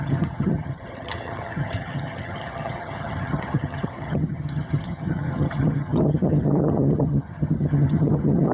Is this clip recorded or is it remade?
remade